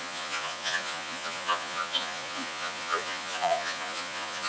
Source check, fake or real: fake